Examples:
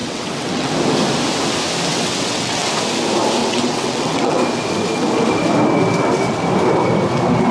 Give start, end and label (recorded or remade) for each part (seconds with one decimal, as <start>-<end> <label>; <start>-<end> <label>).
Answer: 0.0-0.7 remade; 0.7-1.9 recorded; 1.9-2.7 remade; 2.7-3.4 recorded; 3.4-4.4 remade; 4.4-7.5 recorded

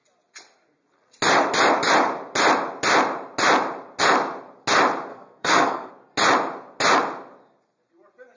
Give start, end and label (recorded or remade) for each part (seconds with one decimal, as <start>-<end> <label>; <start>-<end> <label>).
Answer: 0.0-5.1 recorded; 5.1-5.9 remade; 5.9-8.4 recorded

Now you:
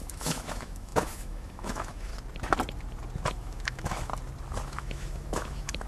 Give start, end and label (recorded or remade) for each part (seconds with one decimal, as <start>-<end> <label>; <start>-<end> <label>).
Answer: 0.0-2.1 remade; 2.1-3.3 recorded; 3.3-4.1 remade; 4.1-4.6 recorded; 4.6-5.9 remade

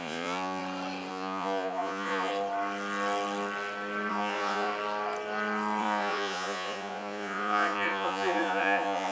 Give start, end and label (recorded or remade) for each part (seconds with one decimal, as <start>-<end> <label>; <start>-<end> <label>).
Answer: 0.0-0.6 remade; 0.6-1.1 recorded; 1.1-2.3 remade; 2.3-4.1 recorded; 4.1-4.7 remade; 4.7-5.8 recorded; 5.8-9.1 remade

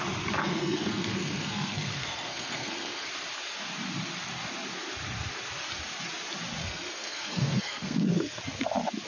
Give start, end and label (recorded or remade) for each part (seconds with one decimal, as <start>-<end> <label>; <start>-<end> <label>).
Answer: 0.0-0.4 recorded; 0.4-3.1 remade; 3.1-6.6 recorded; 6.6-8.4 remade; 8.4-9.1 recorded

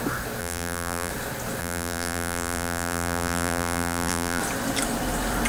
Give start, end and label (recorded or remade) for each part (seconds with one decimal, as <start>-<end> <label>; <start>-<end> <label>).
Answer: 0.0-0.4 recorded; 0.4-1.1 remade; 1.1-1.6 recorded; 1.6-4.4 remade; 4.4-5.5 recorded

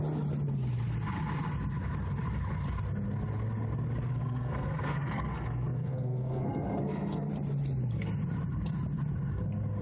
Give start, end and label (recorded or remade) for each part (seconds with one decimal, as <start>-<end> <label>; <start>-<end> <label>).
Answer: 0.0-4.1 recorded; 4.1-7.3 remade; 7.3-9.8 recorded